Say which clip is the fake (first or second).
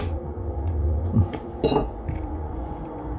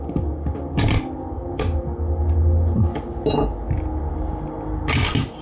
first